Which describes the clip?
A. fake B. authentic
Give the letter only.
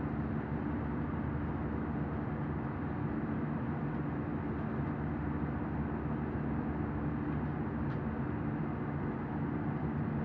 B